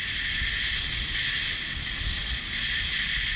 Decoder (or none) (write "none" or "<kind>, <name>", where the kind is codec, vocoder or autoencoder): none